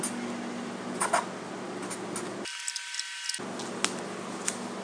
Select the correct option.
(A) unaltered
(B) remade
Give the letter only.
A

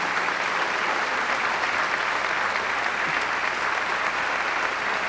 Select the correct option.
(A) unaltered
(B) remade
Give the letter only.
A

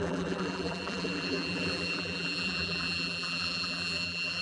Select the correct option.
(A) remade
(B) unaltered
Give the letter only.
A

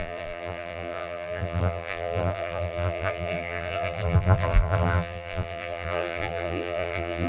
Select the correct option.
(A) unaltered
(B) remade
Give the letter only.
B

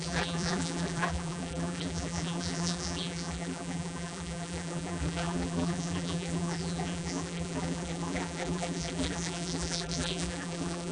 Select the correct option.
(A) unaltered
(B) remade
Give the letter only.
B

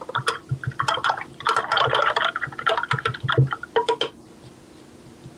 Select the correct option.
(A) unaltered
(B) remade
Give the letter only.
A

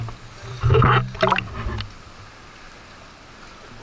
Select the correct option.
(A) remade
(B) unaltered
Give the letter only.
B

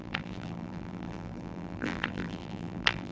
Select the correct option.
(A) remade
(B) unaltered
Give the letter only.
A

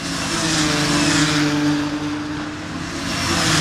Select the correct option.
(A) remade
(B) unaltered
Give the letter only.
B